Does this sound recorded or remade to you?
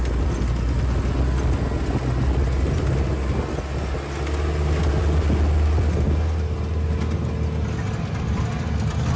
recorded